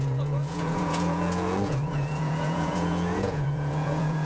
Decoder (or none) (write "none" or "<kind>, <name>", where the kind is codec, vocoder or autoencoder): vocoder, Vocos